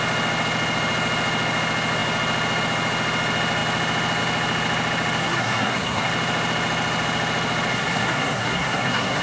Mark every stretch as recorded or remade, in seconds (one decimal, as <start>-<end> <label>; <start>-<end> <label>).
0.0-5.2 recorded; 5.2-6.1 remade; 6.1-7.7 recorded; 7.7-9.2 remade